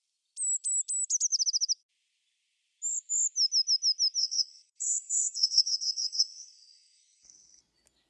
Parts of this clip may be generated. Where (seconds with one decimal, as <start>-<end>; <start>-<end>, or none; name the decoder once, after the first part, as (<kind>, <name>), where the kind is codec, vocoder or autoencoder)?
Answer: 4.2-7.6 (codec, SNAC)